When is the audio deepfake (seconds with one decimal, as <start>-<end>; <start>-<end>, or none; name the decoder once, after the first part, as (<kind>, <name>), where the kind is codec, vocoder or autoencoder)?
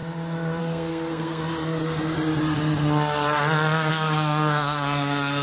0.6-1.4 (codec, SNAC); 3.9-5.4